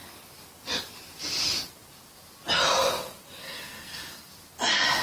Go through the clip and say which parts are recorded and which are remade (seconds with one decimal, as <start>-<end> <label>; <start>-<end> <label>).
0.0-3.4 recorded; 3.4-4.3 remade; 4.3-5.0 recorded